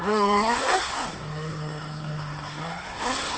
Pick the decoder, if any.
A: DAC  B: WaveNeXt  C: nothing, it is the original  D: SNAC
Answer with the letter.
D